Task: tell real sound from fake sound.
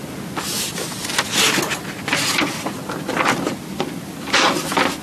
real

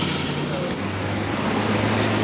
real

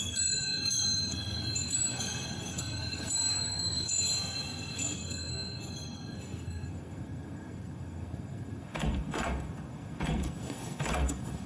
fake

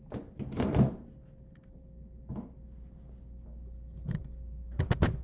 real